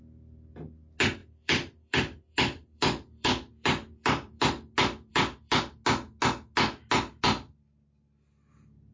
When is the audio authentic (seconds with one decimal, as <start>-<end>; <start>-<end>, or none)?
0.0-1.2; 4.4-5.1; 5.6-8.9